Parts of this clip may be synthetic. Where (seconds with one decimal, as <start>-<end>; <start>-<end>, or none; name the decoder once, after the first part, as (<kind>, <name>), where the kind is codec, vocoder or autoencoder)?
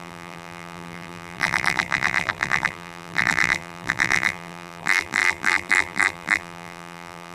0.0-7.3 (vocoder, BigVGAN v2)